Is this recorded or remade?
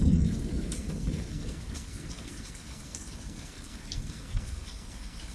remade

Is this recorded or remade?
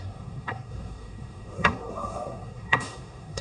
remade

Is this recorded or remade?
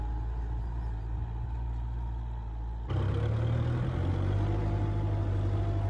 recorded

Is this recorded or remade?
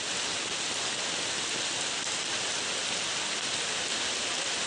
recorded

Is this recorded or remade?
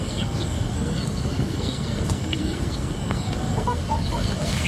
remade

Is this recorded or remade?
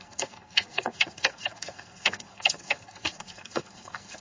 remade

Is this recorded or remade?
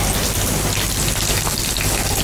recorded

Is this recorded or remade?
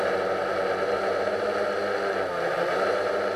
recorded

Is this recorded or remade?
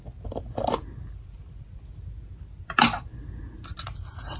recorded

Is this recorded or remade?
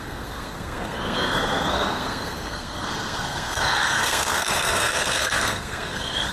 remade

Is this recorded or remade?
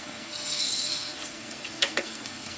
remade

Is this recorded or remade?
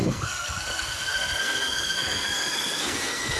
remade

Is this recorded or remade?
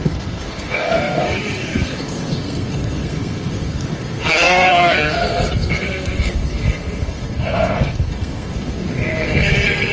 remade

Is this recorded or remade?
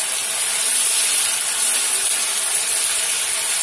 recorded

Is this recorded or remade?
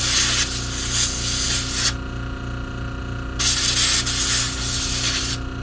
recorded